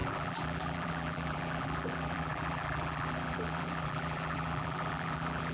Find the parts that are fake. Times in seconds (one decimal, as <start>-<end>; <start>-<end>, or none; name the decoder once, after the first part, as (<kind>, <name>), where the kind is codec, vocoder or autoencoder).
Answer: 0.0-5.5 (vocoder, BigVGAN v2)